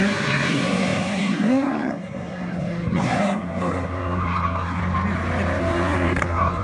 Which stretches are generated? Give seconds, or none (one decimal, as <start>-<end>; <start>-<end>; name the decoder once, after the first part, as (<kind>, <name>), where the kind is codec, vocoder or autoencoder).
0.0-4.8 (codec, SNAC); 5.6-6.6